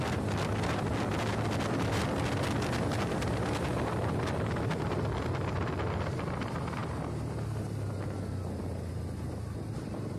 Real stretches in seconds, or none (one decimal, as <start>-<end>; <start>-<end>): 0.0-10.2